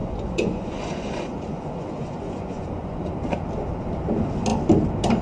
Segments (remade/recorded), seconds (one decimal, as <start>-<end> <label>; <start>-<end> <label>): 0.0-3.1 remade; 3.1-5.2 recorded